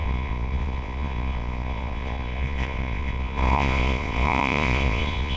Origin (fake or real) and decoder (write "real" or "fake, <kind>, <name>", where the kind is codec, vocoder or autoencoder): fake, vocoder, Vocos